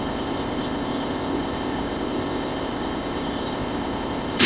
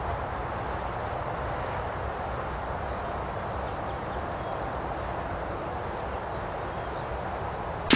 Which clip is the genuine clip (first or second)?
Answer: second